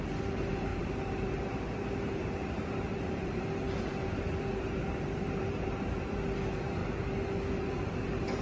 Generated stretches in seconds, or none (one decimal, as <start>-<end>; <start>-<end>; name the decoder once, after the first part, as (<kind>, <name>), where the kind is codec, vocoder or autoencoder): 0.0-6.8 (vocoder, BigVGAN v2); 7.9-8.4